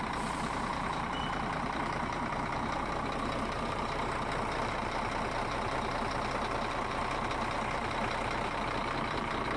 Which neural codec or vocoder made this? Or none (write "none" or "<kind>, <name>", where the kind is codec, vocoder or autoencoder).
vocoder, BigVGAN v2